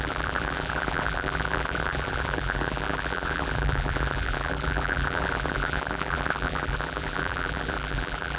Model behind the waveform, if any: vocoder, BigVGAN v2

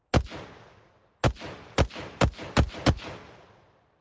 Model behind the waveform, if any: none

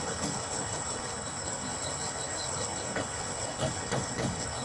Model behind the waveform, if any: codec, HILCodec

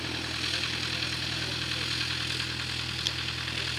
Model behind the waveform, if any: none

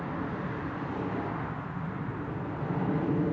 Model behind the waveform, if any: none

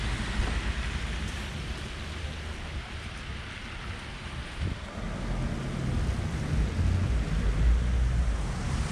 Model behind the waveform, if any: none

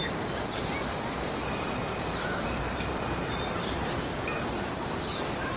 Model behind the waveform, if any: vocoder, BigVGAN v2